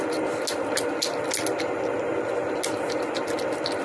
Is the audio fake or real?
real